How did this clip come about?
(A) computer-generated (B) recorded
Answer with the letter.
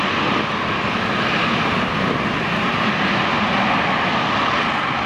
B